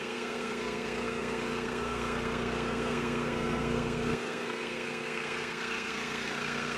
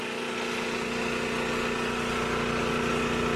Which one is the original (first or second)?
second